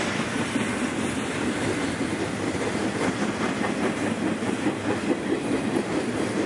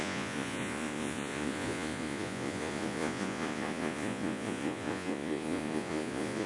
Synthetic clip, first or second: second